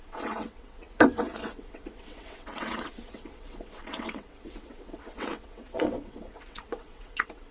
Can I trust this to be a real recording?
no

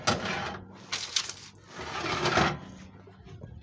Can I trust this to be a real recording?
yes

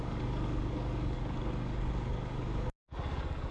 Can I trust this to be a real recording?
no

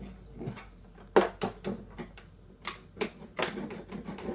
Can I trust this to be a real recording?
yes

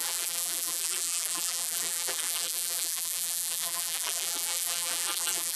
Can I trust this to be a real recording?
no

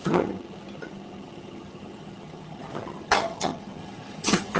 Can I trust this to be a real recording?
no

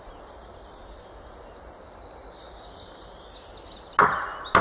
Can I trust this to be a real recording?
yes